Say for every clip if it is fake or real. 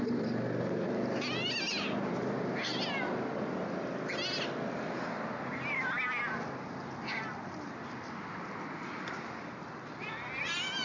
real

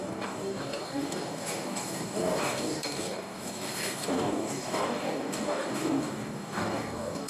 fake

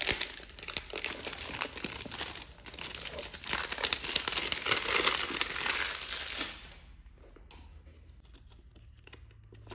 real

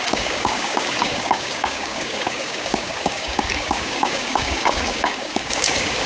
fake